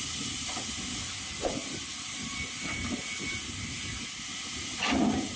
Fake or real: real